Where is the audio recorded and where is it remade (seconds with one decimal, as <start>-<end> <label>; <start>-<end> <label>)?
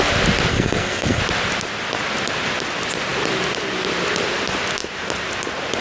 0.0-0.5 recorded; 0.5-1.2 remade; 1.2-5.8 recorded